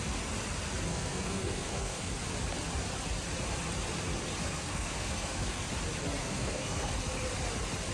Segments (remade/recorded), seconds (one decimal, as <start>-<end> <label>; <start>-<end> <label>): 0.0-0.9 recorded; 0.9-2.1 remade; 2.1-4.4 recorded; 4.4-5.6 remade; 5.6-6.2 recorded; 6.2-6.9 remade; 6.9-7.9 recorded